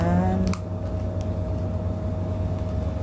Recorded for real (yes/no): yes